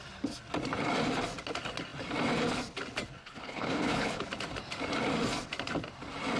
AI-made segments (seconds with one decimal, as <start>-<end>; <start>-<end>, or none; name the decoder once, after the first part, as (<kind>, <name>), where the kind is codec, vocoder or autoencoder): 3.2-4.2 (codec, HILCodec)